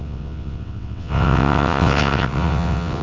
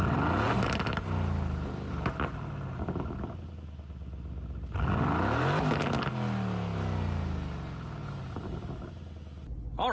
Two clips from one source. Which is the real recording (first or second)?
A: second